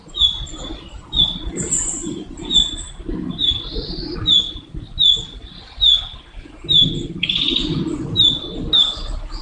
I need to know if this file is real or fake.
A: real